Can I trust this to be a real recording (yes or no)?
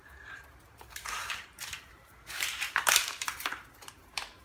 no